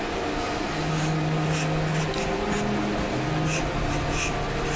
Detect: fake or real real